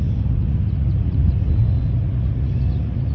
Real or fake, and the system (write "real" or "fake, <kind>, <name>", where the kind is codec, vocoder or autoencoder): fake, vocoder, Vocos